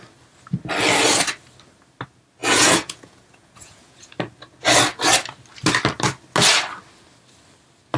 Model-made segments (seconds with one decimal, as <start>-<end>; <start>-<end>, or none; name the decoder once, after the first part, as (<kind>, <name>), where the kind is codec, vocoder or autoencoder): 2.4-4.1 (vocoder, Vocos)

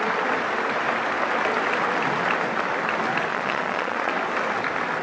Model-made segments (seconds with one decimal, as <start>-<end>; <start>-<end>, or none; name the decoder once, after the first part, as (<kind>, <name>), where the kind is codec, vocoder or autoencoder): 3.3-4.1 (vocoder, Vocos)

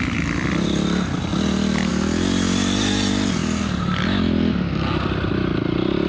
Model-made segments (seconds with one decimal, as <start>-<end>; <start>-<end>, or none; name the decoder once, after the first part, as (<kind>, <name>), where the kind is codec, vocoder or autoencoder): none

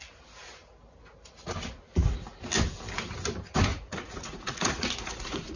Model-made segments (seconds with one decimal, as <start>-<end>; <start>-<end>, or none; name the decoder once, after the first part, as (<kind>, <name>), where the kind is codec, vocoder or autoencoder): 3.7-5.6 (vocoder, Vocos)

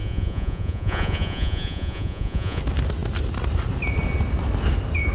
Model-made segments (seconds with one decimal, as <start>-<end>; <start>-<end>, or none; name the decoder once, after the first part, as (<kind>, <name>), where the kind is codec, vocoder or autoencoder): 0.0-2.6 (vocoder, Vocos)

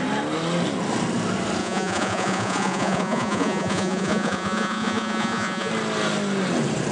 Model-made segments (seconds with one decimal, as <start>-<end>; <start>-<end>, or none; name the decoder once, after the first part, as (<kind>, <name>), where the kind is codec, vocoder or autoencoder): 1.6-5.7 (vocoder, Vocos)